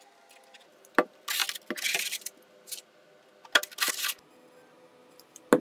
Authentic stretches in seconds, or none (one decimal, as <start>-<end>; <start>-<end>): 0.0-5.6